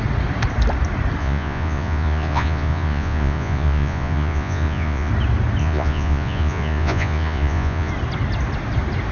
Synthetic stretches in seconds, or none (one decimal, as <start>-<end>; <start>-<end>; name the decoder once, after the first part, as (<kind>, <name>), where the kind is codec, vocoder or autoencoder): 1.2-5.1 (vocoder, Vocos); 5.6-7.9